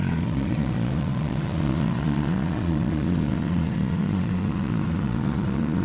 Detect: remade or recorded remade